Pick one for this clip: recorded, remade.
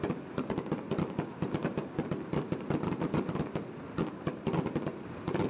recorded